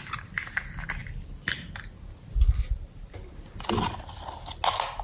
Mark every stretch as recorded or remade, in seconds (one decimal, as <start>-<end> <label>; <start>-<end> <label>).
0.0-5.0 recorded